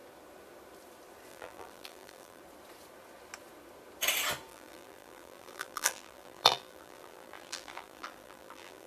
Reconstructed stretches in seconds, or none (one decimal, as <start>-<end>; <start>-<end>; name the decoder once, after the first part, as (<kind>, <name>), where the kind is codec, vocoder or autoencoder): 1.3-2.4 (vocoder, BigVGAN v2); 4.5-8.9